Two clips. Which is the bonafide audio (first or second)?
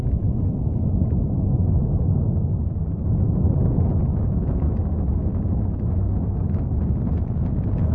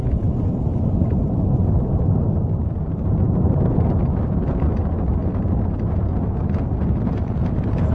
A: first